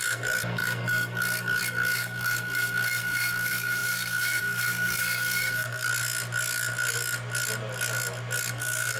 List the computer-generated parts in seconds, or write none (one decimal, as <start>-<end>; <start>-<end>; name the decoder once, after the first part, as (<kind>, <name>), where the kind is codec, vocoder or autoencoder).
0.0-5.9 (codec, SNAC); 8.5-9.0